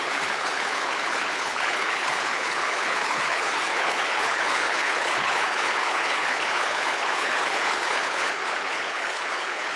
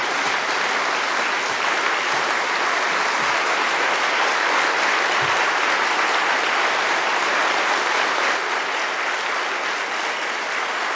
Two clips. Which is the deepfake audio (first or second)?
first